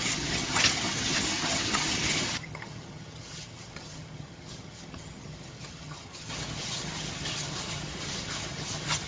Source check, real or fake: fake